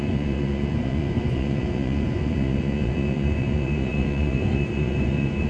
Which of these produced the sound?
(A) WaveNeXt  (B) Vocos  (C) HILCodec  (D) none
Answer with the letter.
B